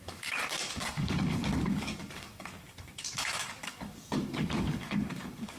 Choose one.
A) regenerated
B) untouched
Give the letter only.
A